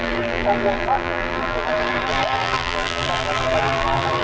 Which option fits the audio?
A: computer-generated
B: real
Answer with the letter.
A